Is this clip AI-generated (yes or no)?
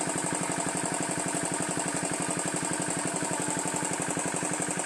no